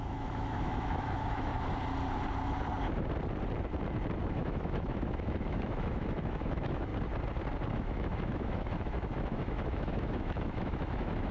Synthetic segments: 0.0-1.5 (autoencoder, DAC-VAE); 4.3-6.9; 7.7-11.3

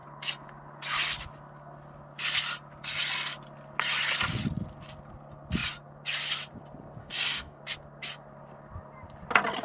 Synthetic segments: 7.0-7.6 (codec, DAC)

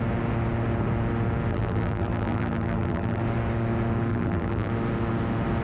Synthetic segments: 1.5-3.2 (vocoder, BigVGAN v2); 4.1-4.7

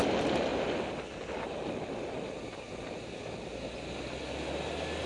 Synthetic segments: none

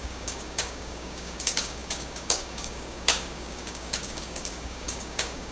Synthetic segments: 0.0-5.5 (codec, DAC)

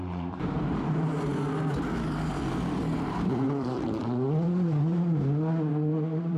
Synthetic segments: 0.0-1.1 (vocoder, BigVGAN v2); 2.5-4.0; 5.7-6.4

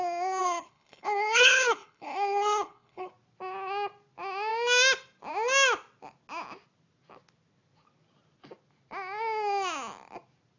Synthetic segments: 0.4-3.1 (codec, HILCodec)

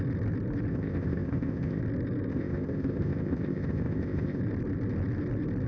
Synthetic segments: 0.7-1.8 (codec, ZipCodec); 2.3-4.4